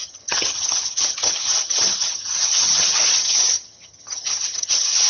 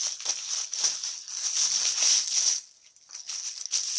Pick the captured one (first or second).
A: second